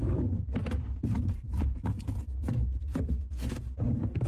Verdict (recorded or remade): recorded